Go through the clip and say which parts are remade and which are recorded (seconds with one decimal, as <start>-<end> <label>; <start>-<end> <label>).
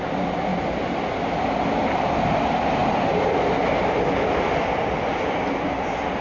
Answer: 0.0-6.2 recorded